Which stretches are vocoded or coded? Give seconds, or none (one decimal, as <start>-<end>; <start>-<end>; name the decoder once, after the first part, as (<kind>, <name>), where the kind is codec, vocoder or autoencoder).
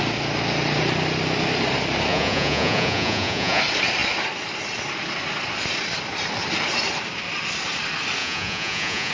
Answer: 2.1-3.6 (vocoder, Vocos); 8.2-9.1